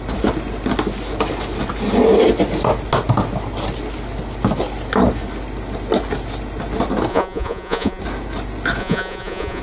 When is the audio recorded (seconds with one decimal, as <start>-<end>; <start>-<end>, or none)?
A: 0.0-7.1; 8.0-8.8